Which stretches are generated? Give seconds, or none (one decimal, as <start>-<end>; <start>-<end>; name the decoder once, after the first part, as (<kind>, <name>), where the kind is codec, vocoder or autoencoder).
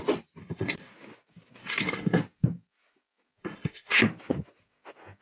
0.4-0.9 (codec, SNAC); 1.6-2.2; 3.4-4.0